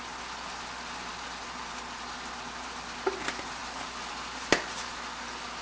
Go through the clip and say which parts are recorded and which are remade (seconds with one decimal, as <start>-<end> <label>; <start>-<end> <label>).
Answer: 0.0-5.6 recorded

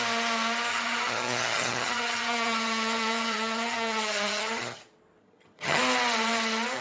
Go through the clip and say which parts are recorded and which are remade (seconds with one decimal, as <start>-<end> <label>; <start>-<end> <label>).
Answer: 0.0-0.7 recorded; 0.7-4.8 remade; 4.8-5.2 recorded; 5.2-5.8 remade; 5.8-6.8 recorded

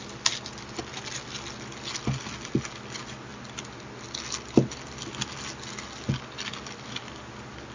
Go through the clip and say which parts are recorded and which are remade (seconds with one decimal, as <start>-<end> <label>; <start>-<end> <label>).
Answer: 0.0-7.7 recorded

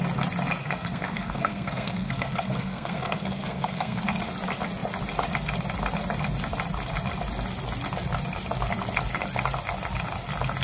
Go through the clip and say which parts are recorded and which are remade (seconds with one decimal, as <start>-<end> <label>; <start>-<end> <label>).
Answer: 0.0-0.6 recorded; 0.6-4.0 remade; 4.0-10.6 recorded

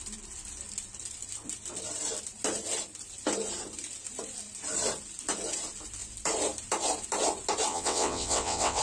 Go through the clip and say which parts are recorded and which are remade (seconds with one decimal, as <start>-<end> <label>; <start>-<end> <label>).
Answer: 0.0-7.7 recorded; 7.7-8.8 remade

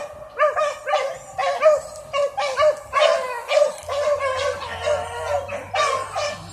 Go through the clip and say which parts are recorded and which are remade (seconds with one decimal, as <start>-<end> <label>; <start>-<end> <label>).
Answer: 0.0-6.5 recorded